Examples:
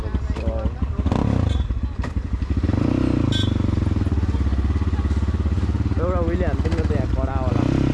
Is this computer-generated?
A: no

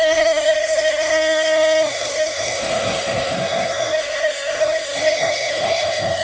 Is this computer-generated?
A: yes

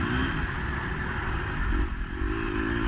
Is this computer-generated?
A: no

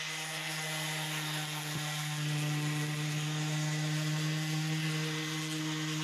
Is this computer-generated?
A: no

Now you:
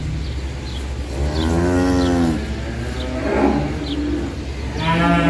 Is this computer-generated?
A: no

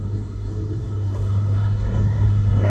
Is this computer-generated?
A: yes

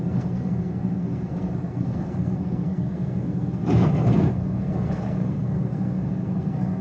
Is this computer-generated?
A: yes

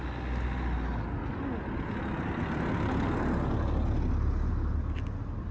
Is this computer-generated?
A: no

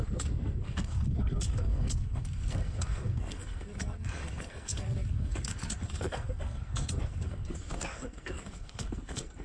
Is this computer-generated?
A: yes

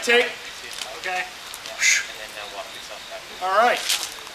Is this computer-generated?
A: no